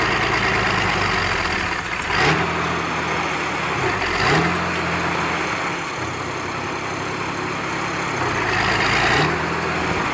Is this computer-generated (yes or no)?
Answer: no